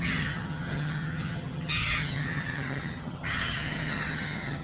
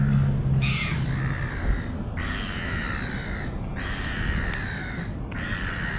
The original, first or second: second